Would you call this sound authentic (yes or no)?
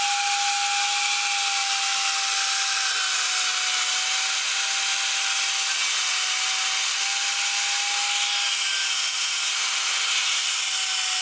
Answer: yes